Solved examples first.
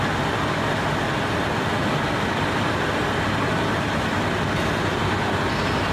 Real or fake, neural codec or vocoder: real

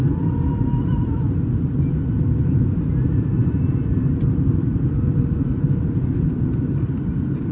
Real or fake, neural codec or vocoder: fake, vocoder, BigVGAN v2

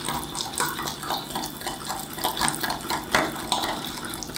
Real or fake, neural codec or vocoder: fake, vocoder, BigVGAN v2